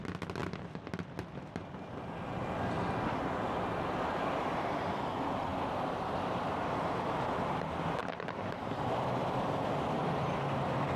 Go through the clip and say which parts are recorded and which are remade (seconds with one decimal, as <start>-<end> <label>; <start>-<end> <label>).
0.0-8.0 recorded; 8.0-8.8 remade; 8.8-11.0 recorded